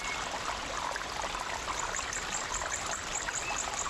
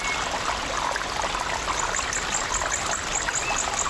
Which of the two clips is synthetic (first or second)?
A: first